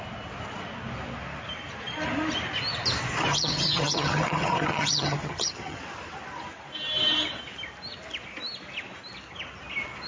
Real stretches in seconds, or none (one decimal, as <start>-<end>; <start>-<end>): 0.0-3.3; 5.8-10.1